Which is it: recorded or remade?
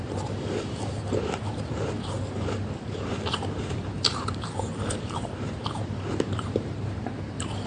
remade